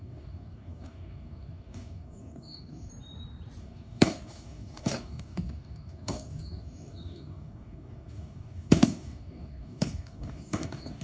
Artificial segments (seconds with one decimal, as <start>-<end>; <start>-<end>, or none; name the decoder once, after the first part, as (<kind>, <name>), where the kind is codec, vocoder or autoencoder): 0.0-2.9 (codec, DAC); 3.6-11.0

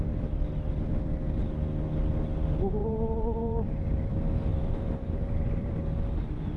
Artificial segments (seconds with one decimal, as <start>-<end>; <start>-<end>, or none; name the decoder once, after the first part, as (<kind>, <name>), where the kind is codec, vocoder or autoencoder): 2.8-4.1 (vocoder, BigVGAN v2); 4.5-5.8

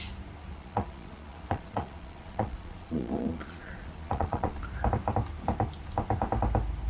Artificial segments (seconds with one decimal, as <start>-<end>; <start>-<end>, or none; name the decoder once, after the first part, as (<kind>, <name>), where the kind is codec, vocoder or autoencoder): 0.5-4.6 (vocoder, Vocos)

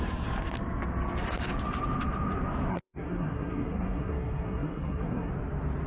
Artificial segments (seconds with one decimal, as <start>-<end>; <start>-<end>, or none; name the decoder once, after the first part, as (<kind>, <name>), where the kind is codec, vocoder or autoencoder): 2.7-5.3 (codec, SNAC)

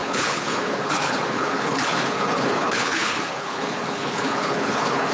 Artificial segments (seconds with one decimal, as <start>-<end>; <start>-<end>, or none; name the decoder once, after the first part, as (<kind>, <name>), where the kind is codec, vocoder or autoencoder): 0.0-5.1 (codec, HILCodec)

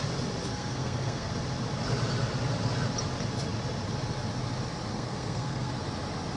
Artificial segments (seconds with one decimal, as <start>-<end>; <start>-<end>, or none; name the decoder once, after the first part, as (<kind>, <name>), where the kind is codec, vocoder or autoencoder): 0.5-1.3 (codec, SNAC); 4.9-5.7

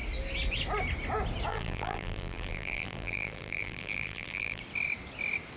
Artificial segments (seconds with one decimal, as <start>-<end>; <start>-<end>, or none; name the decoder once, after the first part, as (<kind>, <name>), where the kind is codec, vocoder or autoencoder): 1.5-4.6 (vocoder, BigVGAN v2)

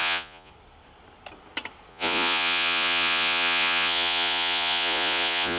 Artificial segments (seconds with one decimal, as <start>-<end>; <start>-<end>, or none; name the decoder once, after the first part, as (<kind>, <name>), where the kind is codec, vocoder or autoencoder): 0.0-0.5 (vocoder, Vocos); 1.9-5.6